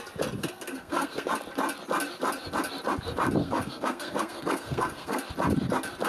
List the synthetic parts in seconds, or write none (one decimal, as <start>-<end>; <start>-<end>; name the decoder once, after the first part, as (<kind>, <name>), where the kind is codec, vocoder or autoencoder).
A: 0.4-1.3 (codec, SNAC); 3.4-5.2